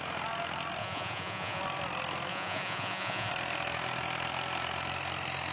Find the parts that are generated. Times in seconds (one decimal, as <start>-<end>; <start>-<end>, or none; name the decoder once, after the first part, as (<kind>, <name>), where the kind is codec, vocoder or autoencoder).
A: 0.8-1.6 (vocoder, Vocos); 2.3-3.3